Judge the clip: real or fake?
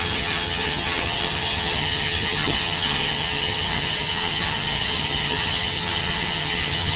fake